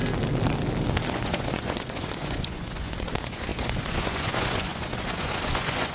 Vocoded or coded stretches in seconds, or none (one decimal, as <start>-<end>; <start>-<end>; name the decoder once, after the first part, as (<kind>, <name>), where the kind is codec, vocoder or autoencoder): 1.1-5.9 (vocoder, Vocos)